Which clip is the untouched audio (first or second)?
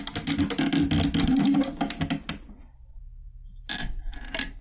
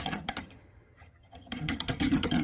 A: first